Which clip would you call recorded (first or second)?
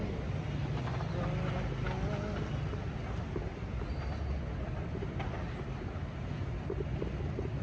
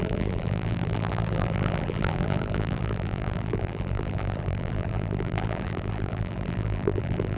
first